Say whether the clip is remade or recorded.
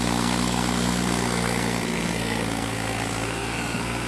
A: remade